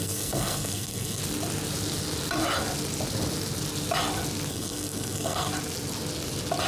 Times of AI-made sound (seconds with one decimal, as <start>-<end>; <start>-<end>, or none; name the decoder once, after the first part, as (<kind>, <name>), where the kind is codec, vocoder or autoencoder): 0.0-1.2 (codec, SNAC); 4.5-5.5